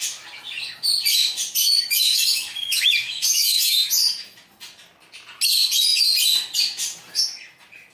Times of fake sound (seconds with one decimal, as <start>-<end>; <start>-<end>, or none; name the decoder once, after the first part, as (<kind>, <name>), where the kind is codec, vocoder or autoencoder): 1.6-3.9 (autoencoder, DAC-VAE)